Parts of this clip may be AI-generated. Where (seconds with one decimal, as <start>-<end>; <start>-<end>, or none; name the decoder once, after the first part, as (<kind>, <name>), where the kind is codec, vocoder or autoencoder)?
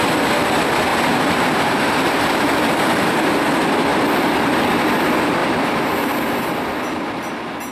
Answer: 0.9-3.0 (vocoder, BigVGAN v2)